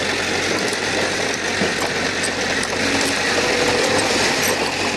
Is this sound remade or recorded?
remade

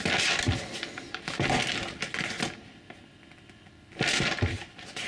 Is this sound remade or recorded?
recorded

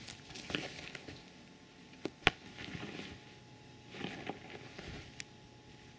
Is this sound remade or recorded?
recorded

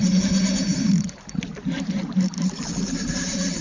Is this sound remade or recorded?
remade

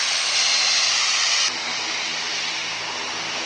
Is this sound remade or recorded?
recorded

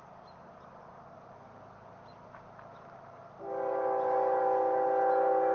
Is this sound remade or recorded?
recorded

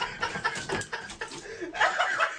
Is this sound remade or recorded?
recorded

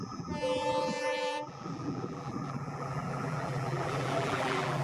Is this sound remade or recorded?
remade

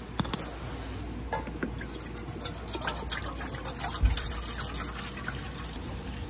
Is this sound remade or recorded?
recorded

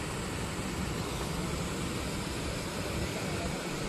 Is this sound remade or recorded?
recorded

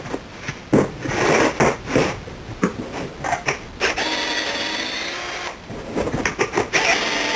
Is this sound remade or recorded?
recorded